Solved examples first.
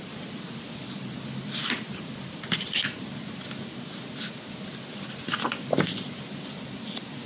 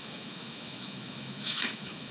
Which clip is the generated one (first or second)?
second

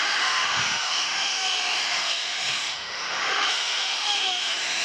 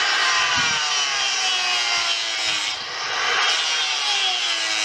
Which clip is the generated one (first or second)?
first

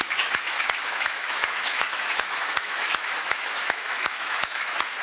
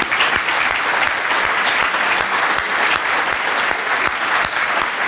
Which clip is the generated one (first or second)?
first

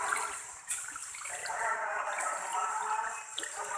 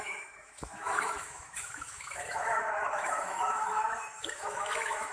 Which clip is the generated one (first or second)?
second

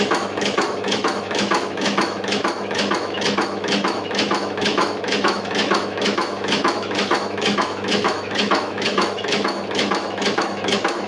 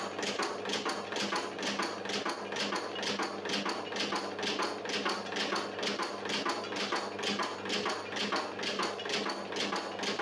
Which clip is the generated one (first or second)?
first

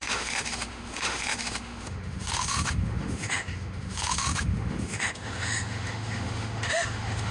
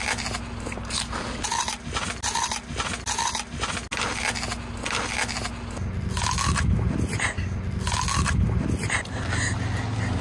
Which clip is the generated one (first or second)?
first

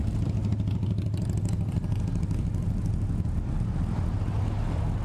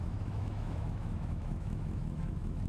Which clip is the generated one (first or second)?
second